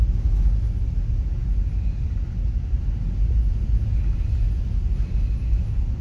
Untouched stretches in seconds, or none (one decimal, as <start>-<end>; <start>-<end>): 0.0-6.0